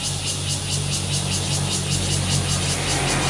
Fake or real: real